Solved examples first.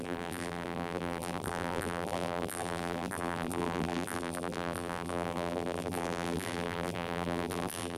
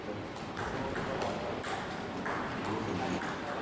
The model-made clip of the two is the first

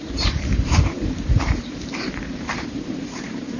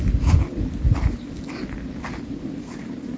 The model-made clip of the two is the first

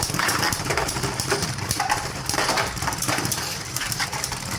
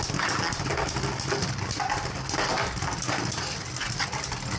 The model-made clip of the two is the first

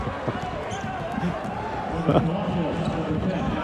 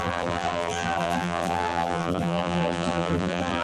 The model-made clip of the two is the second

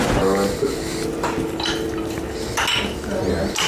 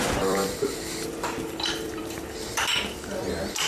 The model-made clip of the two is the second